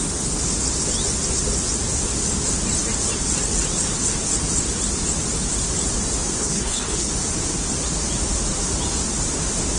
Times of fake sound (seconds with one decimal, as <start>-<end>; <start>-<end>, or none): 6.4-7.1